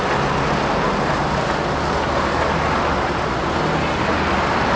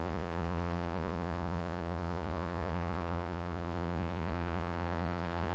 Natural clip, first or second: first